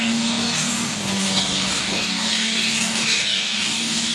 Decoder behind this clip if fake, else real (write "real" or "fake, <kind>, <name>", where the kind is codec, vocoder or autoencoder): fake, codec, DAC